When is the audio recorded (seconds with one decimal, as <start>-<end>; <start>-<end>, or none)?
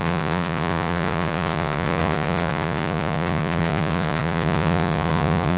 none